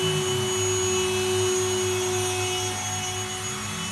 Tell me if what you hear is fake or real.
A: real